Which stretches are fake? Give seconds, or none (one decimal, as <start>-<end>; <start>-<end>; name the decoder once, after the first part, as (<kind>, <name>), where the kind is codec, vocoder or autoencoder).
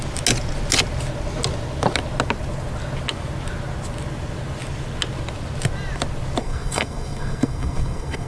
6.4-8.3 (codec, SNAC)